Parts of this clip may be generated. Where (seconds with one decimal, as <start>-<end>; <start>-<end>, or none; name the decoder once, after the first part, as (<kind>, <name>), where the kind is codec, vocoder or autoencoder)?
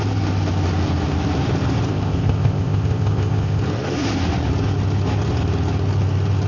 1.9-3.6 (codec, ZipCodec)